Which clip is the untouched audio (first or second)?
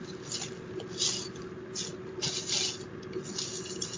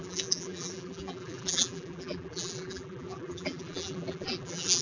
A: first